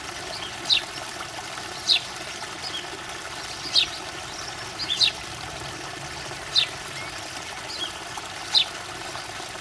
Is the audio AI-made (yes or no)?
no